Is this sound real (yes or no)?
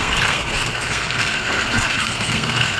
no